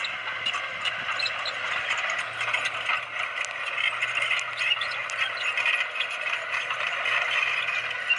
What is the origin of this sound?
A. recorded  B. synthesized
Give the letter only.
A